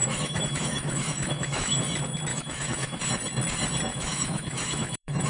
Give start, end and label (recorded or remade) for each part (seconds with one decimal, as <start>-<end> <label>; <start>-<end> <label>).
0.0-1.8 remade; 1.8-2.3 recorded; 2.3-3.0 remade; 3.0-3.9 recorded; 3.9-5.3 remade